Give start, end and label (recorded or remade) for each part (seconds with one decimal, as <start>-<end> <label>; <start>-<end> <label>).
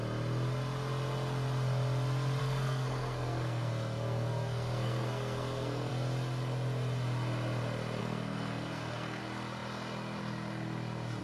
0.0-2.4 recorded; 2.4-5.9 remade; 5.9-8.0 recorded; 8.0-9.2 remade; 9.2-11.2 recorded